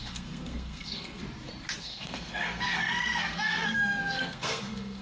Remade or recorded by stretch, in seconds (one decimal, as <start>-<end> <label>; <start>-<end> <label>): 0.0-1.2 remade; 1.2-1.8 recorded; 1.8-5.0 remade

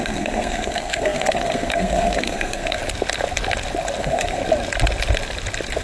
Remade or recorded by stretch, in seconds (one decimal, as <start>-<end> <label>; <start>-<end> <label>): 0.0-2.8 remade; 2.8-4.0 recorded; 4.0-4.4 remade; 4.4-5.8 recorded

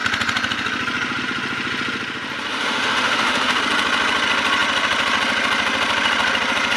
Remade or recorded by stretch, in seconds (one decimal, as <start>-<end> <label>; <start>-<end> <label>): 0.0-2.5 recorded; 2.5-3.6 remade; 3.6-6.8 recorded

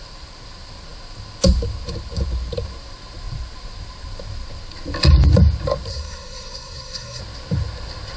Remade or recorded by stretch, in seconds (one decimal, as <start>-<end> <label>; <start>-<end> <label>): 0.0-5.9 recorded; 5.9-7.2 remade; 7.2-8.2 recorded

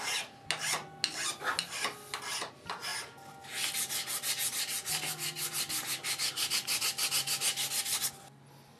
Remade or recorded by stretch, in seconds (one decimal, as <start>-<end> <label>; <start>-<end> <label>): 0.0-8.8 recorded